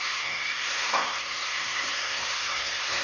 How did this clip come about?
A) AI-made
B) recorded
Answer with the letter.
A